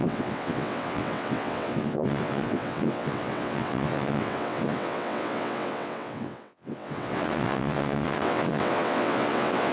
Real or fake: fake